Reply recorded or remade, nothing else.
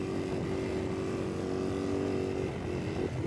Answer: recorded